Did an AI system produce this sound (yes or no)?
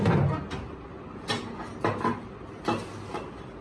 no